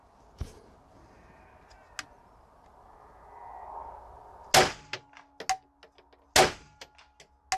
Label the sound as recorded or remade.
recorded